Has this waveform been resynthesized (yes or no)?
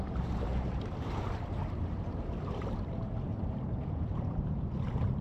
yes